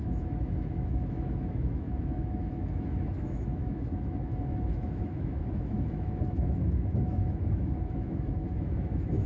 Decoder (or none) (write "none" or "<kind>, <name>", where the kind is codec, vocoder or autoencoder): autoencoder, DAC-VAE